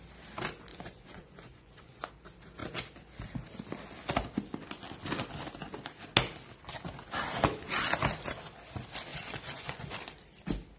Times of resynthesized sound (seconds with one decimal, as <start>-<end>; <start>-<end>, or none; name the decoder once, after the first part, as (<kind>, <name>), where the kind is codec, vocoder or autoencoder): 0.7-2.1 (vocoder, Vocos); 9.1-9.9